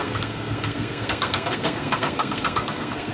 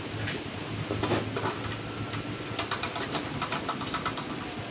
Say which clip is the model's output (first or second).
first